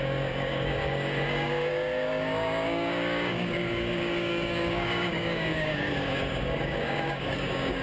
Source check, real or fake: fake